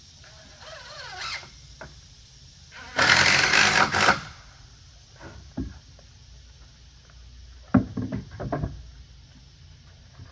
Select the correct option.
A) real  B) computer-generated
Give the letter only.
A